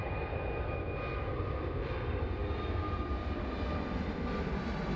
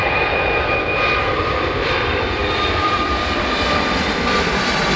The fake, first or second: second